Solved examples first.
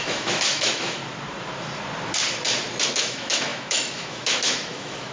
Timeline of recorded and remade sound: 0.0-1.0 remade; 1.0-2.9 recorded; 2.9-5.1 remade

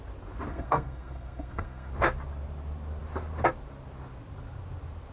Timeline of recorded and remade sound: 0.0-0.5 recorded; 0.5-1.9 remade; 1.9-5.1 recorded

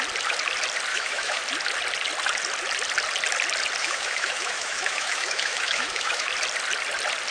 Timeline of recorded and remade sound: 0.0-0.9 recorded; 0.9-1.4 remade; 1.4-3.8 recorded; 3.8-6.3 remade; 6.3-7.3 recorded

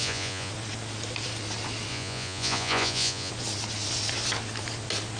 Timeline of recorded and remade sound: 0.0-0.5 remade; 0.5-1.9 recorded; 1.9-3.3 remade; 3.3-5.2 recorded

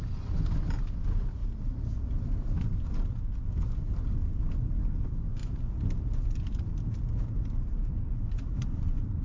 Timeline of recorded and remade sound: 0.0-1.4 recorded; 1.4-1.9 remade; 1.9-5.4 recorded; 5.4-9.2 remade